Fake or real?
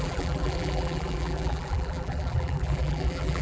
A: fake